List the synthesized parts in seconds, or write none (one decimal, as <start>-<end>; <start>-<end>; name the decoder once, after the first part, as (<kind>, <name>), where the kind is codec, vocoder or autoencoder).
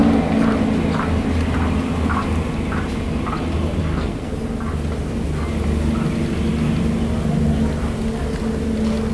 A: 3.8-4.3 (codec, SNAC)